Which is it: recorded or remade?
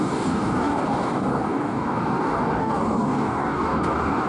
remade